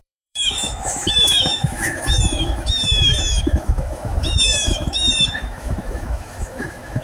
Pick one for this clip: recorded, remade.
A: remade